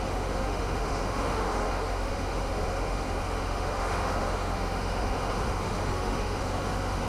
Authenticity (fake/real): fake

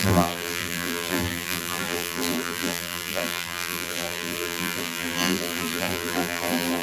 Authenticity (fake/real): fake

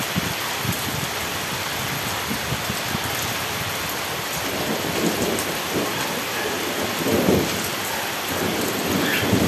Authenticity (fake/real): real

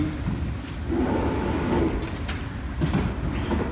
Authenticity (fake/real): real